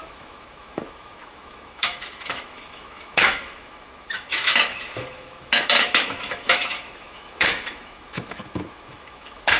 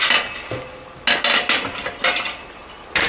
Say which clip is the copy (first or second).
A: first